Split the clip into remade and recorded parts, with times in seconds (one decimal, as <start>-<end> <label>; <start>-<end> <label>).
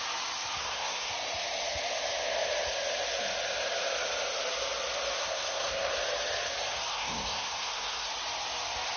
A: 0.0-0.6 recorded; 0.6-1.1 remade; 1.1-5.2 recorded; 5.2-5.9 remade; 5.9-6.9 recorded; 6.9-8.1 remade; 8.1-9.0 recorded